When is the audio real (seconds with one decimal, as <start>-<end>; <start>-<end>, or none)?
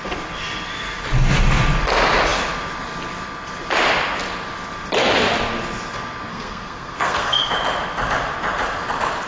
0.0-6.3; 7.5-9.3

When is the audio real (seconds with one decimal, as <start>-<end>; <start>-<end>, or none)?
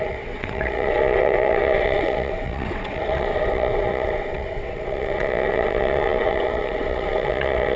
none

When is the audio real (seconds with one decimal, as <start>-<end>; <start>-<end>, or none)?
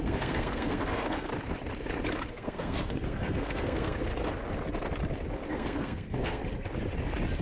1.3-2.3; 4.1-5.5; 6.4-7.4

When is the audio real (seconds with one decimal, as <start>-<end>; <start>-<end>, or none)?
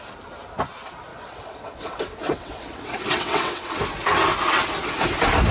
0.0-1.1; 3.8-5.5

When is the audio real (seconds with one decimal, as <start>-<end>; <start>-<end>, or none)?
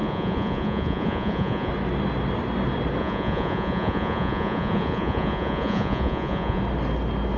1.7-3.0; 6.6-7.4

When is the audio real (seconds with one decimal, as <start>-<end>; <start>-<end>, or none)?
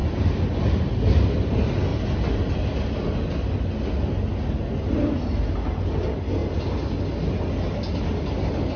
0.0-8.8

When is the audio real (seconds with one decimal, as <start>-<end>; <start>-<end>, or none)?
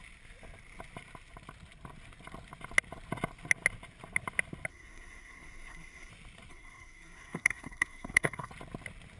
0.0-4.7; 6.1-6.5; 8.5-9.2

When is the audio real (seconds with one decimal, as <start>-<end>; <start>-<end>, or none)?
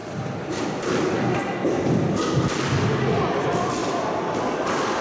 0.7-3.8